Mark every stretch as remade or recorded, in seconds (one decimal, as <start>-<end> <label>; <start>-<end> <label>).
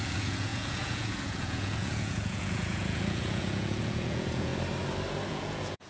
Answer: 0.0-4.5 remade; 4.5-5.3 recorded; 5.3-5.9 remade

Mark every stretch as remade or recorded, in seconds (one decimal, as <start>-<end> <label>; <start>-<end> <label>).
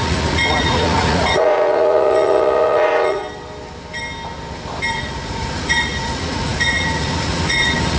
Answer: 0.0-3.2 remade; 3.2-4.9 recorded; 4.9-8.0 remade